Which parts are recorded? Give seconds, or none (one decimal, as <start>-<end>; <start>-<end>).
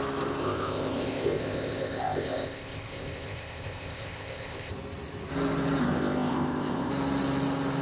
0.0-0.4; 4.7-5.8; 6.9-7.8